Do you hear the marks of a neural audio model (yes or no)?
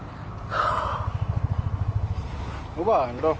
no